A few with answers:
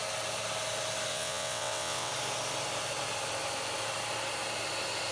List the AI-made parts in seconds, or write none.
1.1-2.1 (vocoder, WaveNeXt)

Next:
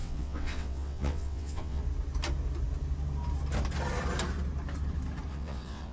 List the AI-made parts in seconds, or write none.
0.0-1.8 (vocoder, WaveNeXt); 5.3-5.9

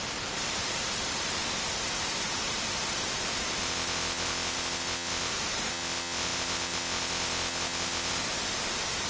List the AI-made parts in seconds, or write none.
3.6-5.3 (vocoder, WaveNeXt); 5.7-8.2

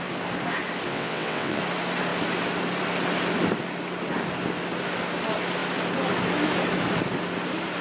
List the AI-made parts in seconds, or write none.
0.9-1.6 (vocoder, WaveNeXt)

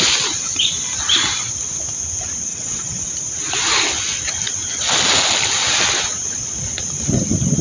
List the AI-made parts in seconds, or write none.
2.5-3.1 (vocoder, WaveNeXt)